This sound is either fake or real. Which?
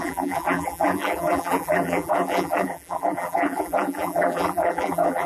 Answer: fake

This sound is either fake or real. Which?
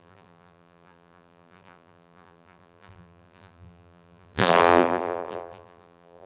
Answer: fake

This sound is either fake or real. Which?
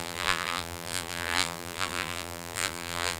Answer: fake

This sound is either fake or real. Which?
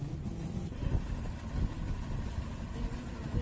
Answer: real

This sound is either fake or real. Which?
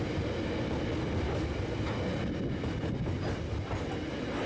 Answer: real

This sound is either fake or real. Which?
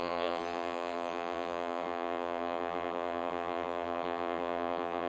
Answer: fake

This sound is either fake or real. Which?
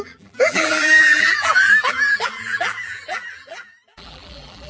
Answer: fake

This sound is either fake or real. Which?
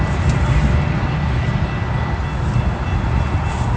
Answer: real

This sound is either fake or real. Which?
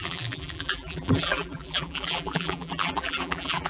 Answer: fake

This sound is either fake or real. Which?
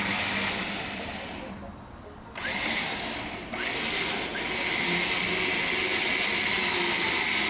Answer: real